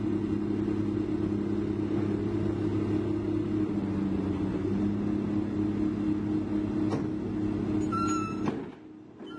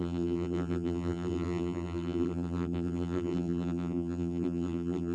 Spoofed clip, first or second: second